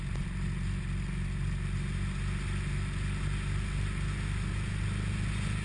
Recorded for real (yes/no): yes